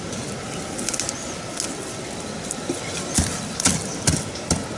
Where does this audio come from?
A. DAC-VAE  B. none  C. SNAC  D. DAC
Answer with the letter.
B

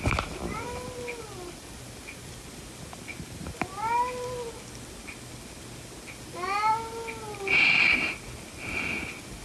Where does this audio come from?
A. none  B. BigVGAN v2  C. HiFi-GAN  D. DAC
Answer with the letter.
A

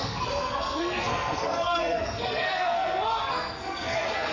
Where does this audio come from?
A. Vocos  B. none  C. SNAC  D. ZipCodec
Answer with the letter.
C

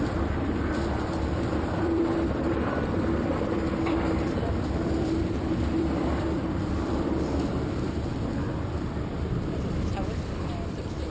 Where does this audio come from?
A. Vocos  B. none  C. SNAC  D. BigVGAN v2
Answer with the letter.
D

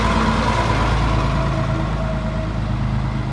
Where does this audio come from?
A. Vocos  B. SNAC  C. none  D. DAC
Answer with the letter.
C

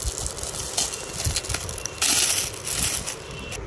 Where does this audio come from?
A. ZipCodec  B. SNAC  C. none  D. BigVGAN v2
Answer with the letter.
C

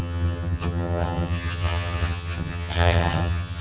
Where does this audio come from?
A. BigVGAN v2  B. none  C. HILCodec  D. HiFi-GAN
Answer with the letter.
D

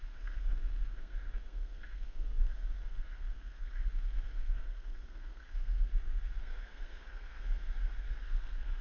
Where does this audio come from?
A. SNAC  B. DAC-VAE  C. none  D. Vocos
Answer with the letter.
A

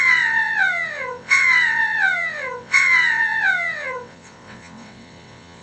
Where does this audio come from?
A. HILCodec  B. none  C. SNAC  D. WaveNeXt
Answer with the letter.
D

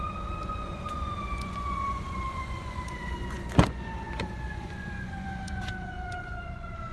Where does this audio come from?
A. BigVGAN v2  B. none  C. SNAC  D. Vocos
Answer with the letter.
D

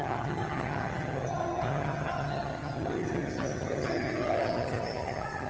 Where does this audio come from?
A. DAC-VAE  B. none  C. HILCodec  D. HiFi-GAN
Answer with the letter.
D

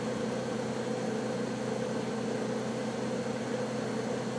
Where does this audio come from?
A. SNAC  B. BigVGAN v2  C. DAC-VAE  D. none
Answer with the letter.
D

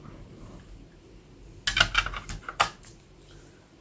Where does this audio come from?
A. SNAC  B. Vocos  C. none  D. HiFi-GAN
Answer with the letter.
C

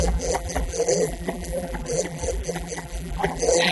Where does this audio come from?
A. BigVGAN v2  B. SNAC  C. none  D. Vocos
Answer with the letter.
A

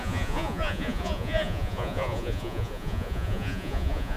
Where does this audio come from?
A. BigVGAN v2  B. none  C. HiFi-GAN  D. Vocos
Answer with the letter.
D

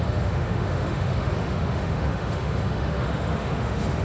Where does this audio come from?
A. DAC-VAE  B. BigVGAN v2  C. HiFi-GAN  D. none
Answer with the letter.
A